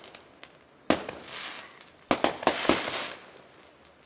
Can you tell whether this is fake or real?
real